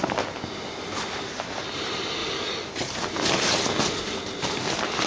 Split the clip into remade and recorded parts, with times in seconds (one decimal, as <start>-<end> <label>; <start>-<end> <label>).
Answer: 0.0-5.1 recorded